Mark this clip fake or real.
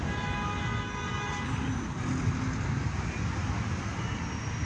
real